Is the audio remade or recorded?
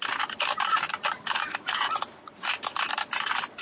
recorded